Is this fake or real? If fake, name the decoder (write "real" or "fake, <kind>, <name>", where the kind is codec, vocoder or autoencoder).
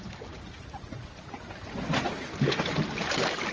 real